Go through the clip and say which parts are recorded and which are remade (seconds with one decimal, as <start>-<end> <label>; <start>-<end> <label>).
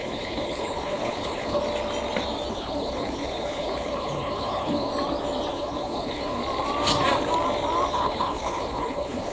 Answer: 0.0-1.6 remade; 1.6-2.5 recorded; 2.5-4.9 remade; 4.9-5.5 recorded; 5.5-6.4 remade; 6.4-7.9 recorded; 7.9-9.3 remade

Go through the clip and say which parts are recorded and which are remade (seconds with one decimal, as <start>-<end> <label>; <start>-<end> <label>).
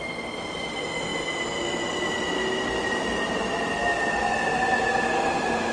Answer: 0.0-5.7 recorded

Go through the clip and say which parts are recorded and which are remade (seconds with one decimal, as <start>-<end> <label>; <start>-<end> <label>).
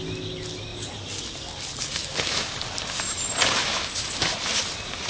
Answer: 0.0-2.0 recorded; 2.0-2.6 remade; 2.6-3.6 recorded; 3.6-4.1 remade; 4.1-5.1 recorded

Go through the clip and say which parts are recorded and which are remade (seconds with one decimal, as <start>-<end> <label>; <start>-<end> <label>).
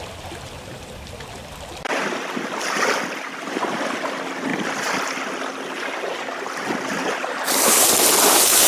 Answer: 0.0-8.7 recorded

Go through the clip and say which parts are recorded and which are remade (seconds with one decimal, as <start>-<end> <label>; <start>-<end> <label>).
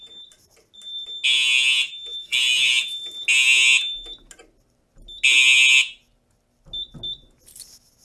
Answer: 0.0-2.1 recorded; 2.1-2.7 remade; 2.7-8.0 recorded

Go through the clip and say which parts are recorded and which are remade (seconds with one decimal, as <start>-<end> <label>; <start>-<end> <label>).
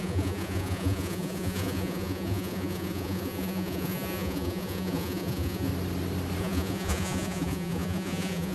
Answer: 0.0-5.7 remade; 5.7-6.4 recorded; 6.4-8.5 remade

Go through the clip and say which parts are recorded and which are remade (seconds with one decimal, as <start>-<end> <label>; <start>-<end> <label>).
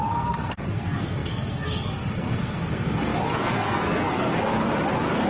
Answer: 0.0-4.6 remade; 4.6-5.3 recorded